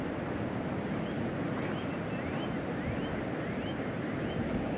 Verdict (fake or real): real